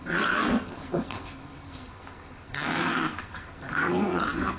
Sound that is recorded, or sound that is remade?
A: remade